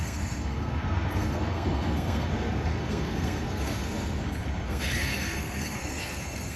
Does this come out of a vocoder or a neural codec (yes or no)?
yes